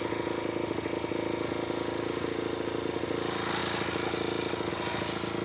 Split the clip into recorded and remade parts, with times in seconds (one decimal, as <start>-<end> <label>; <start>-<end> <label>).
0.0-5.4 recorded